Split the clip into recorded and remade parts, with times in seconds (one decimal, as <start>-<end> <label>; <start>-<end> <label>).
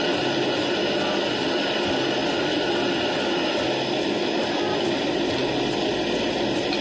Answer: 0.0-6.8 recorded